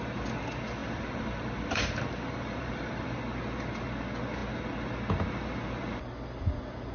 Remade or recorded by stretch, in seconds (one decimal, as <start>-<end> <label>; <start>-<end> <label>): 0.0-0.8 recorded; 0.8-3.2 remade; 3.2-6.9 recorded